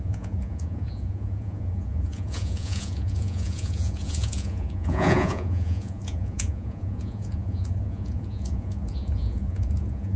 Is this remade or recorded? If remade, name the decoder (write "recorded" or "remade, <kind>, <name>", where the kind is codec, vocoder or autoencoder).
remade, vocoder, Vocos